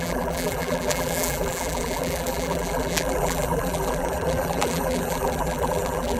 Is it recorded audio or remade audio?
remade